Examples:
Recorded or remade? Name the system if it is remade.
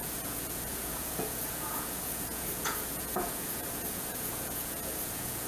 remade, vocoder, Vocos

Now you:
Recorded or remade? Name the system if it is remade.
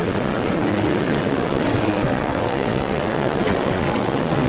remade, vocoder, WaveNeXt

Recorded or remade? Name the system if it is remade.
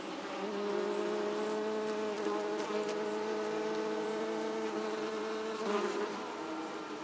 remade, vocoder, BigVGAN v2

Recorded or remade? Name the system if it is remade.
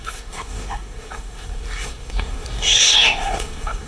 remade, codec, SNAC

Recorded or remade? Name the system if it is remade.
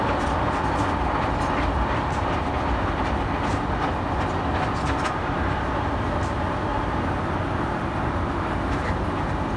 recorded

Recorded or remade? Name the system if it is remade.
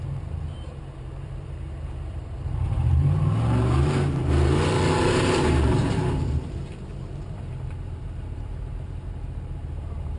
remade, vocoder, BigVGAN v2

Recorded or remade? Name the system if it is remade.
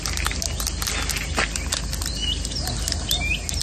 recorded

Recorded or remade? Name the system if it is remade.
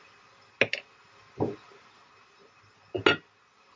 recorded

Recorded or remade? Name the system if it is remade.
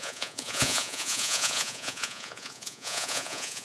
remade, vocoder, Vocos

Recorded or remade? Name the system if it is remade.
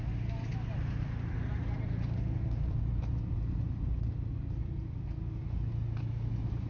recorded